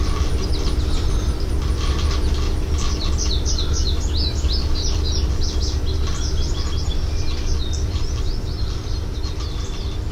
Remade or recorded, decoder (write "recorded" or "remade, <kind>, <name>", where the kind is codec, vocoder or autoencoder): recorded